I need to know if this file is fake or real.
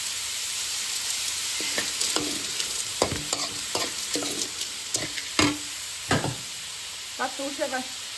fake